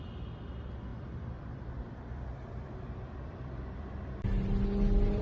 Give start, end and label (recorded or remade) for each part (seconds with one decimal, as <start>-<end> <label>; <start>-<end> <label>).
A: 0.0-0.9 recorded; 0.9-4.0 remade; 4.0-5.2 recorded